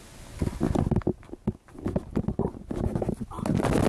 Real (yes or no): yes